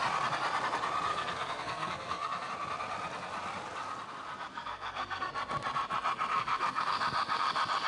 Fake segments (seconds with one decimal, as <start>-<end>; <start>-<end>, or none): 1.1-2.5; 4.5-5.3; 6.3-7.0